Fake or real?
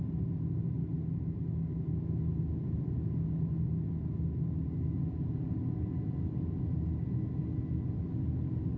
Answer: real